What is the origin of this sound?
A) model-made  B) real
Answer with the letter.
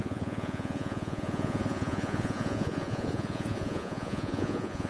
A